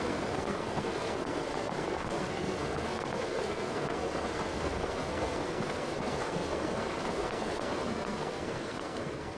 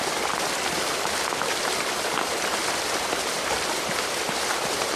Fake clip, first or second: first